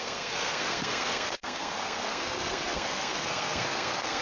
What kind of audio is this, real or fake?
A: fake